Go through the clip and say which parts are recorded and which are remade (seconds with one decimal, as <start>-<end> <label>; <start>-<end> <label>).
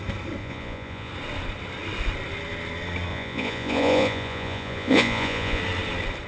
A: 0.0-0.4 recorded; 0.4-1.1 remade; 1.1-3.1 recorded; 3.1-5.6 remade; 5.6-6.3 recorded